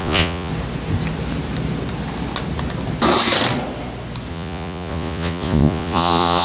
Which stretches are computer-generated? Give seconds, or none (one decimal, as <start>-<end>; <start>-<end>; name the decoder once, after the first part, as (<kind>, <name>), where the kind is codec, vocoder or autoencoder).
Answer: 0.0-0.5 (vocoder, Vocos); 4.3-6.4